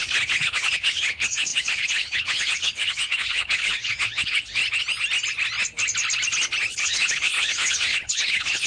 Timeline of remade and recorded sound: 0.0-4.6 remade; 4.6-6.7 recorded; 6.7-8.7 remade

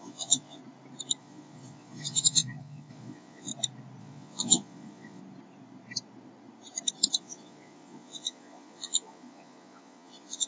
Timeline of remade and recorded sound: 0.0-0.6 remade; 0.6-1.2 recorded; 1.2-3.5 remade; 3.5-4.0 recorded; 4.0-5.2 remade; 5.2-7.2 recorded; 7.2-10.5 remade

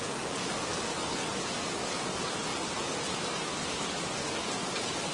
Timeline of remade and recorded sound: 0.0-5.1 recorded